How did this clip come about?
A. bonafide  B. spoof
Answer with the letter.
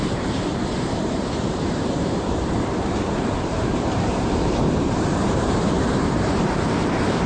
B